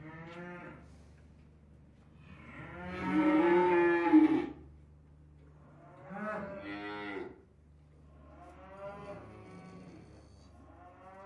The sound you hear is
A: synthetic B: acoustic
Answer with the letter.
B